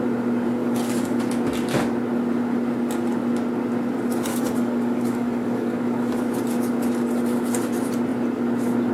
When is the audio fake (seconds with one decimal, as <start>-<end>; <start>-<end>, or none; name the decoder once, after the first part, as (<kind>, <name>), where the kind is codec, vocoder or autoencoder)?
0.6-1.2 (codec, DAC); 4.3-6.2